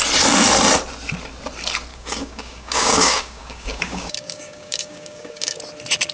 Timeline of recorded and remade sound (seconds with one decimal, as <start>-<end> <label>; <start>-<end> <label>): 0.0-1.9 recorded; 1.9-5.6 remade; 5.6-6.1 recorded